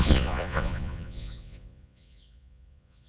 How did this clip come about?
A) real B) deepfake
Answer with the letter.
B